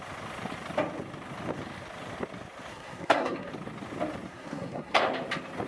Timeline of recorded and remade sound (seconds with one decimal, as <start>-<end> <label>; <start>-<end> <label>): 0.0-2.7 recorded; 2.7-3.5 remade; 3.5-4.3 recorded; 4.3-5.0 remade; 5.0-5.7 recorded